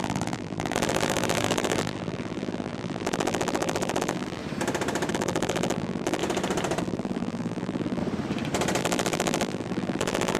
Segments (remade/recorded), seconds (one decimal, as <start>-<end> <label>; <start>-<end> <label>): 0.0-4.4 remade; 4.4-5.1 recorded; 5.1-6.2 remade; 6.2-6.8 recorded; 6.8-8.0 remade; 8.0-8.8 recorded; 8.8-10.4 remade